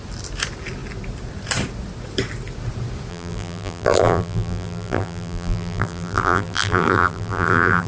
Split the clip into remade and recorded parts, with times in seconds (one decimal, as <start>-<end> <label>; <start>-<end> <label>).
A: 0.0-3.1 recorded; 3.1-7.9 remade